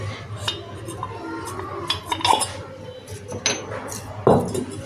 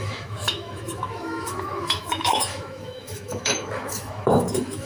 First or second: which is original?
first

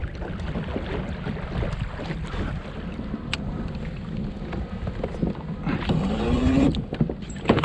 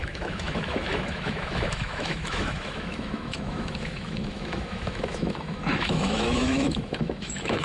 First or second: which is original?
first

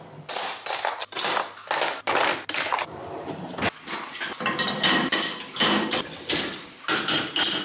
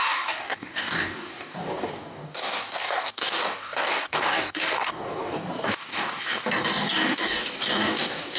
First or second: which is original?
first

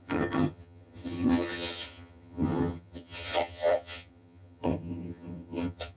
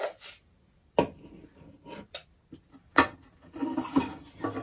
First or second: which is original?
second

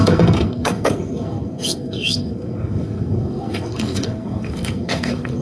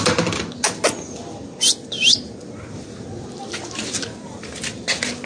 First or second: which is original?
second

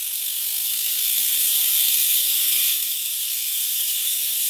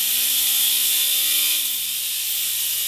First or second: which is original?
second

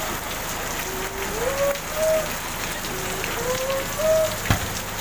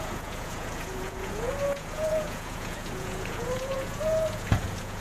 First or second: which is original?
first